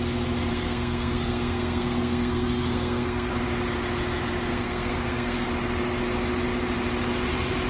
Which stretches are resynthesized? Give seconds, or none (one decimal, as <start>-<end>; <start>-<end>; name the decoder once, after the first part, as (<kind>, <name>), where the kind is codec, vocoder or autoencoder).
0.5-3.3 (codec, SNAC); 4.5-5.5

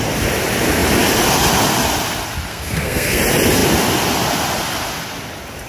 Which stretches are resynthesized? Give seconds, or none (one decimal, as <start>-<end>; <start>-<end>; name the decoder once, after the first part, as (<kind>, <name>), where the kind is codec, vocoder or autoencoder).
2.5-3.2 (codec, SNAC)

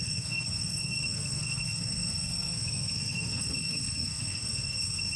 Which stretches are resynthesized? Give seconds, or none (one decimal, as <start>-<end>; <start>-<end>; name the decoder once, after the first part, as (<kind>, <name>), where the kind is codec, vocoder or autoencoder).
0.0-5.2 (codec, SNAC)

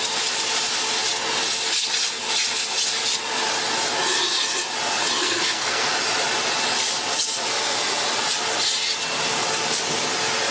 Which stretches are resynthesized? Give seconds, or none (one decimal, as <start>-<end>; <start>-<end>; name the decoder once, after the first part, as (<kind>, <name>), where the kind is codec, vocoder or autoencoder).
5.2-5.9 (codec, SNAC)

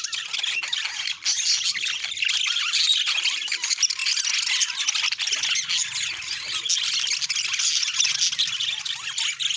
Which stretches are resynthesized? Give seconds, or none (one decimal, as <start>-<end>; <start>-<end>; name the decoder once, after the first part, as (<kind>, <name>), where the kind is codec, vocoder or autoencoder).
none